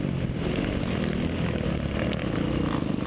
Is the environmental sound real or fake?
real